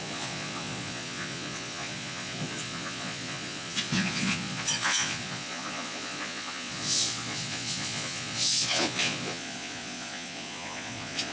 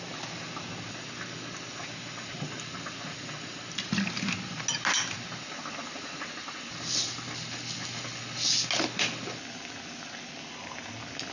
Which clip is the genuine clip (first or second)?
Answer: second